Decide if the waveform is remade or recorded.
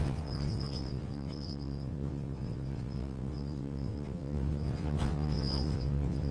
remade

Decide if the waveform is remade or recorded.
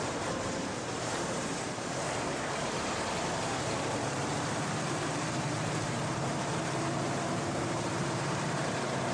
remade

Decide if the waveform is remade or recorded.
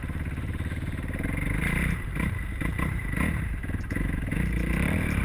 remade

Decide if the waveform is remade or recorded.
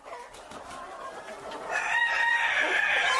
recorded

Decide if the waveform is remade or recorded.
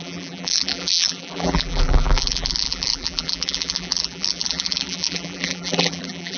remade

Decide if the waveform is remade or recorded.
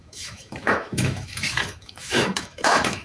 remade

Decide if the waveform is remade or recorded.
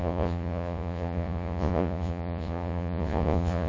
remade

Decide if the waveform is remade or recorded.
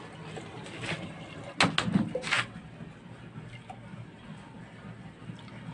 recorded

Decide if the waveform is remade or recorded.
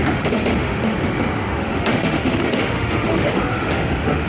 remade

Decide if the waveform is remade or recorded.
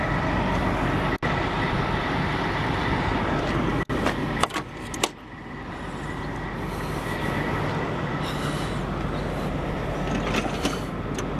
recorded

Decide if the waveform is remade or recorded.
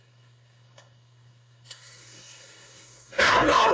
remade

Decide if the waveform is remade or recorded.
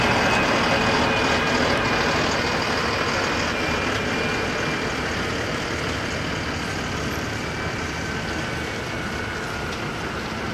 recorded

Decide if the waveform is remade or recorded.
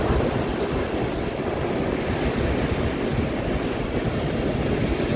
recorded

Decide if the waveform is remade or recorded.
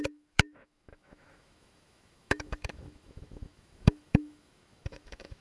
remade